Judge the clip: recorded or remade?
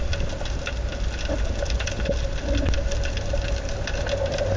recorded